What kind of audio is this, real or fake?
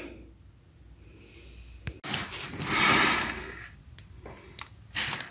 real